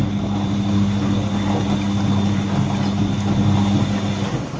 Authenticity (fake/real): real